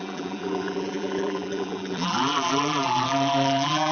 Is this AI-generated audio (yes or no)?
yes